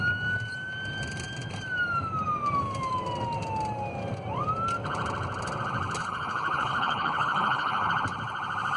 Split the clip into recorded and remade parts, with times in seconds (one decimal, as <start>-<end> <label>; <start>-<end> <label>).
0.0-6.0 recorded; 6.0-7.9 remade; 7.9-8.8 recorded